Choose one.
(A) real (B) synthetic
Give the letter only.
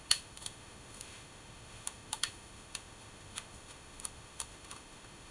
B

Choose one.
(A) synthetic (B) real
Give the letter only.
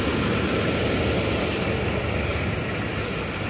B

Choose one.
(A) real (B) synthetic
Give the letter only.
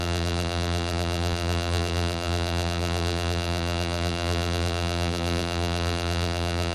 B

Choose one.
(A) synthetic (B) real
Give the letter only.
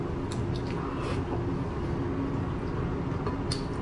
B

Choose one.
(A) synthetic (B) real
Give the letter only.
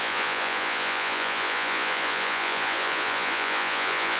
A